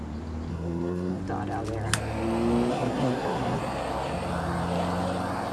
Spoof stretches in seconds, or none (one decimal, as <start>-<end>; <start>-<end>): 0.5-1.2; 2.7-3.6